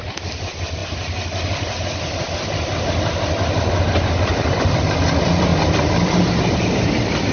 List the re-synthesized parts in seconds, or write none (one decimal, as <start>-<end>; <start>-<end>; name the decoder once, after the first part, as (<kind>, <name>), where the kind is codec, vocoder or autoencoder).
0.0-0.8 (vocoder, BigVGAN v2); 3.8-7.3